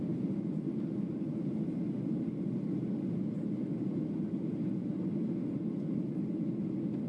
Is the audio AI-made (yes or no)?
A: no